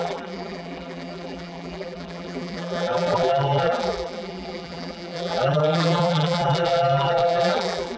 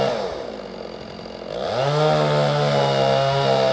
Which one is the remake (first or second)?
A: first